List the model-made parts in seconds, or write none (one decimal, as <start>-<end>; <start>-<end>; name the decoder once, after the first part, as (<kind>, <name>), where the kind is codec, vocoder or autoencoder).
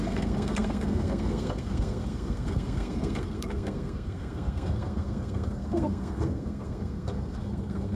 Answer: 0.0-8.0 (codec, SNAC)